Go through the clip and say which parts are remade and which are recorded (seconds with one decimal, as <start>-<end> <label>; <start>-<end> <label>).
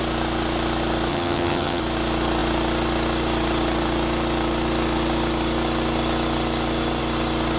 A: 0.0-1.1 recorded; 1.1-1.8 remade; 1.8-7.6 recorded